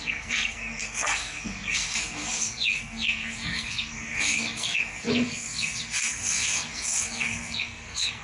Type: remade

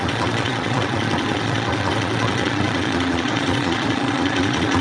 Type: remade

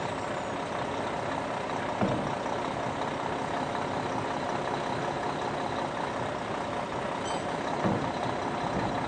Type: recorded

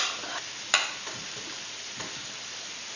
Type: recorded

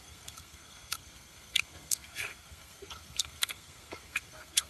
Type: remade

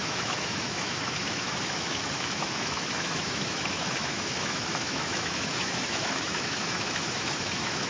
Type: remade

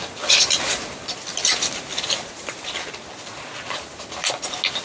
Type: recorded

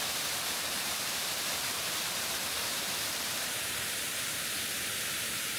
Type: remade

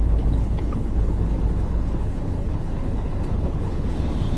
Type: remade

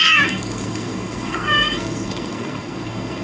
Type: remade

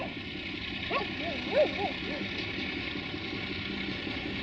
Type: recorded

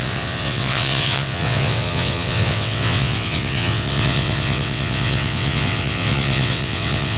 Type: remade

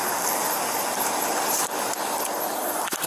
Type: recorded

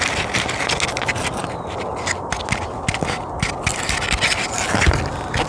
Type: recorded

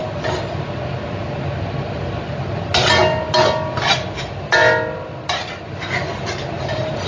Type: recorded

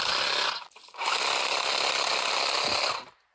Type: recorded